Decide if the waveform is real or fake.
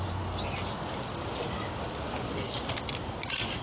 real